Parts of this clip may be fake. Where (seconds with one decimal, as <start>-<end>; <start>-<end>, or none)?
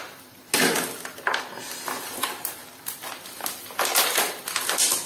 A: none